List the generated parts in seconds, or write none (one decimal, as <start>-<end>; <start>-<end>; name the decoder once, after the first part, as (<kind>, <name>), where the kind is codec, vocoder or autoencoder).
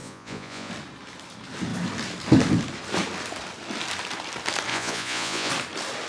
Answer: 0.0-0.7 (vocoder, Vocos); 4.7-5.5